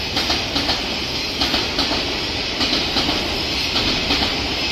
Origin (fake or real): real